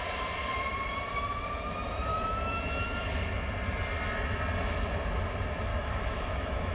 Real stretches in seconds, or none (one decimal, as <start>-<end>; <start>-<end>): 0.0-2.1; 2.6-5.7